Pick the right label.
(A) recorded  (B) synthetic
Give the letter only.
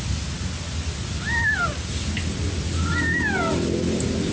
A